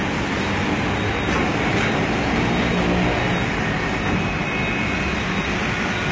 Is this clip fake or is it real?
real